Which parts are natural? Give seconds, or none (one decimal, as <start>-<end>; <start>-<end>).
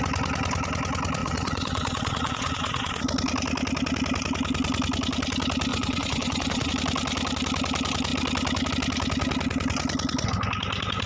0.0-1.2; 3.0-5.7; 6.7-11.1